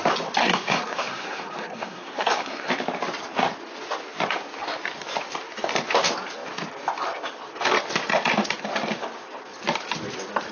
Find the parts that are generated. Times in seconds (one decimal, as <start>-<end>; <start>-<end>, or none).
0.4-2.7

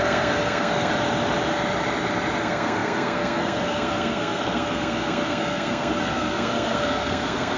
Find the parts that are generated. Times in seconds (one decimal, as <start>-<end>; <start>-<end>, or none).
0.0-0.9; 2.4-7.6

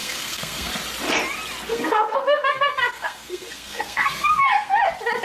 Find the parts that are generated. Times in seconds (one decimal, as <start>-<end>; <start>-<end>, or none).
0.0-0.7; 1.7-4.8

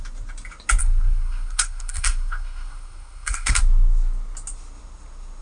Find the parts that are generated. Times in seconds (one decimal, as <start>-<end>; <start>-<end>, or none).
0.8-3.6

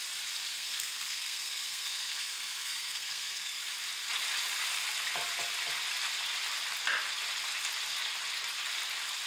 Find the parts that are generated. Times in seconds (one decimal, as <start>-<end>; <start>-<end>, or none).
0.5-3.6

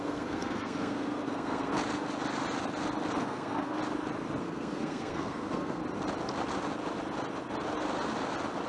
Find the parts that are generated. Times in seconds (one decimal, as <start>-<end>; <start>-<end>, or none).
0.0-1.7; 3.2-3.8; 4.4-5.8

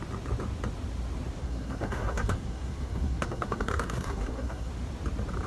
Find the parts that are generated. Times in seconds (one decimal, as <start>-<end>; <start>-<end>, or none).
1.4-4.7

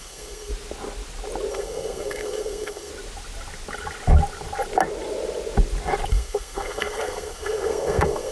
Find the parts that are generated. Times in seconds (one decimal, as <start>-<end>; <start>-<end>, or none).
0.0-0.5; 1.5-2.9; 6.1-8.3